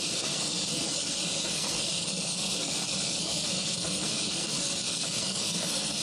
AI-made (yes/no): yes